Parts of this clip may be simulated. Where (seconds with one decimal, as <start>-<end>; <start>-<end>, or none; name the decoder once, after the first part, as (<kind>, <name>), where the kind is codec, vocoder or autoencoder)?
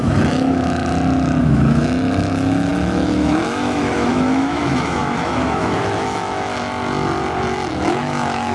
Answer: 0.0-0.8 (autoencoder, DAC-VAE); 1.4-6.5; 7.7-8.5